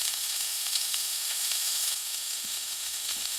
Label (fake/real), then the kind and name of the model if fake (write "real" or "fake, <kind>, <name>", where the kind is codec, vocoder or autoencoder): fake, autoencoder, DAC-VAE